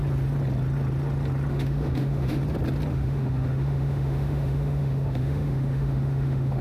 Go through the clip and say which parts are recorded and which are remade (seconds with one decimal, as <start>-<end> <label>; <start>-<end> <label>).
0.0-1.5 recorded; 1.5-2.4 remade; 2.4-2.9 recorded; 2.9-6.6 remade